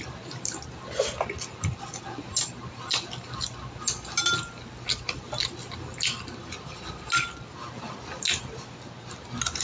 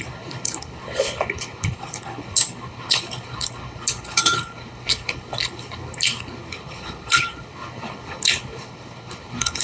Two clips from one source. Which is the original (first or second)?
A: first